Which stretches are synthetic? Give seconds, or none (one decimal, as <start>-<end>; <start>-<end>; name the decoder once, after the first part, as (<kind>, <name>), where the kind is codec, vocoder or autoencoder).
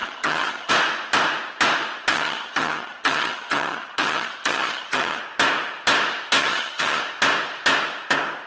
0.0-0.7 (vocoder, HiFi-GAN); 2.1-5.2; 6.4-7.0